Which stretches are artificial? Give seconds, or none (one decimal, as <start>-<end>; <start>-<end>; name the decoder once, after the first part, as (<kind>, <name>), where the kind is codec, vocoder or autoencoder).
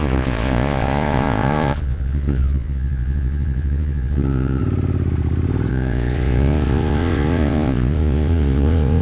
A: 0.0-4.6 (vocoder, Vocos); 5.7-9.0